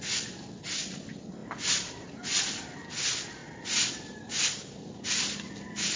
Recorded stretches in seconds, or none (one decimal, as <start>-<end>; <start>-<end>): 0.0-6.0